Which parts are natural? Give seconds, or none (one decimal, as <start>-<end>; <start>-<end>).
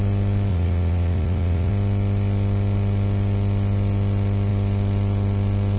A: 0.0-0.5; 1.7-5.8